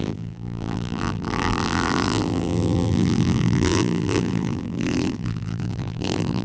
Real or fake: fake